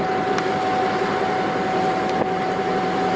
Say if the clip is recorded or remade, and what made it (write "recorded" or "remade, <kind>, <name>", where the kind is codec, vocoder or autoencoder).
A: recorded